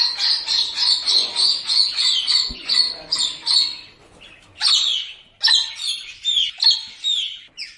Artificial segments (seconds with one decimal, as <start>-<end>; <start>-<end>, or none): 0.7-2.9